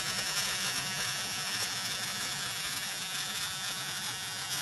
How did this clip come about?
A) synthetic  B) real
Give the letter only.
A